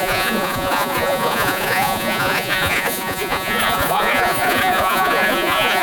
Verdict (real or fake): fake